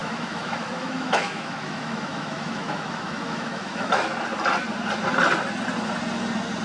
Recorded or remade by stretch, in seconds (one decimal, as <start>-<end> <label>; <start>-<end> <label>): 0.0-4.0 remade; 4.0-6.6 recorded